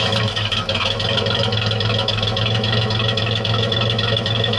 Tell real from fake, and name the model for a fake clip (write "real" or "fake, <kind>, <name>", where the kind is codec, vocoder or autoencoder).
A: fake, autoencoder, DAC-VAE